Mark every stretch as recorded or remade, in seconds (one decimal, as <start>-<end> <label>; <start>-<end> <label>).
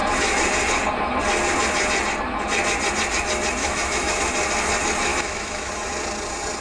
0.0-3.6 recorded; 3.6-4.2 remade; 4.2-5.1 recorded; 5.1-5.7 remade; 5.7-6.6 recorded